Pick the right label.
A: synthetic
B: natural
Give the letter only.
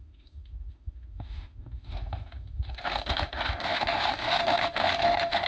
A